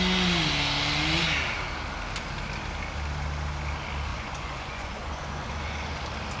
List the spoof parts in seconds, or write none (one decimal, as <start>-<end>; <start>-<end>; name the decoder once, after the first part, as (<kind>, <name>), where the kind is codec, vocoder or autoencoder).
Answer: 4.1-6.0 (vocoder, Vocos)